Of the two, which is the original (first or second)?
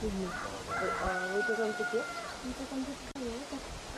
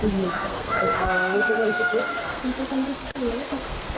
first